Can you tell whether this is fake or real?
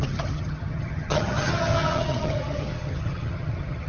fake